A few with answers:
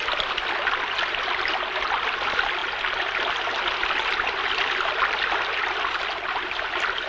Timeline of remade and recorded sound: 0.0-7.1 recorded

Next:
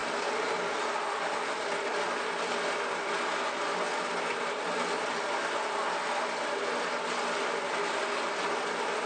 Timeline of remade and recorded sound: 0.0-9.1 recorded

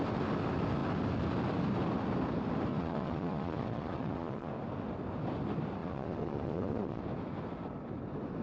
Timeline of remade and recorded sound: 0.0-2.7 recorded; 2.7-4.5 remade; 4.5-5.8 recorded; 5.8-7.0 remade; 7.0-8.4 recorded

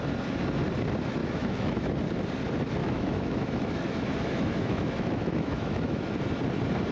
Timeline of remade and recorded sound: 0.0-1.2 recorded; 1.2-1.9 remade; 1.9-2.8 recorded; 2.8-6.1 remade; 6.1-6.9 recorded

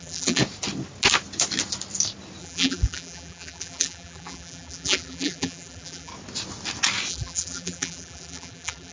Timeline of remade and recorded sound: 0.0-0.4 remade; 0.4-2.4 recorded; 2.4-6.1 remade; 6.1-7.1 recorded; 7.1-8.9 remade

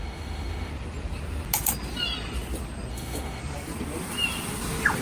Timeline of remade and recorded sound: 0.0-0.7 remade; 0.7-2.9 recorded; 2.9-3.4 remade; 3.4-5.0 recorded